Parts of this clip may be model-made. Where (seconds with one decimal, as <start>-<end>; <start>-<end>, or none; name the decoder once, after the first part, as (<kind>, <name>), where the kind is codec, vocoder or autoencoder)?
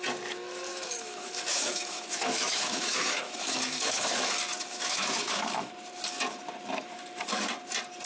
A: 0.7-4.3 (autoencoder, DAC-VAE); 4.7-5.7